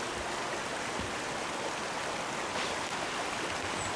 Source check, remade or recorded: recorded